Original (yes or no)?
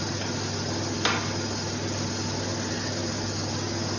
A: yes